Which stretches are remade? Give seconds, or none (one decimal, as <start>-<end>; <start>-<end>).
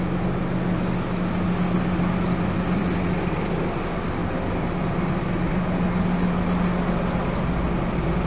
none